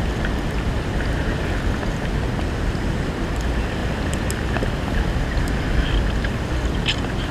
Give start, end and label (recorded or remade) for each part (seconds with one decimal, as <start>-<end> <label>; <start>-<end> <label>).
0.0-7.3 recorded